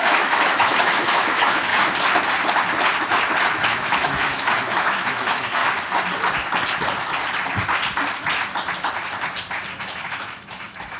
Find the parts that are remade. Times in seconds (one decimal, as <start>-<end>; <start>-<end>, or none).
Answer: 0.0-1.7; 3.5-5.6; 9.8-11.0